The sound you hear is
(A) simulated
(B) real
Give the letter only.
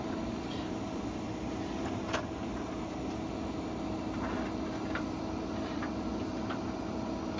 B